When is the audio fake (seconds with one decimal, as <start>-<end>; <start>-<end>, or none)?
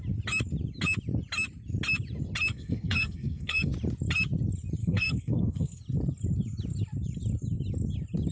2.5-3.7; 4.8-5.8